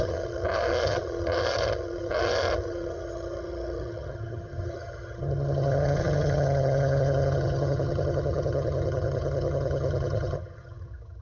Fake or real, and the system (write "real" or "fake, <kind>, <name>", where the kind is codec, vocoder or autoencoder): fake, vocoder, HiFi-GAN